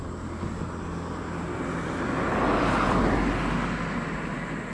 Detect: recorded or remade recorded